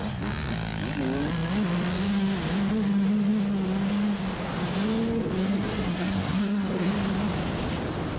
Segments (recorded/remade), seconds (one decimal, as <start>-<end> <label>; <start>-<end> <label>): 0.0-5.4 recorded; 5.4-6.9 remade; 6.9-8.2 recorded